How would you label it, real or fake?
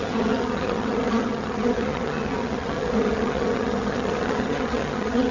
fake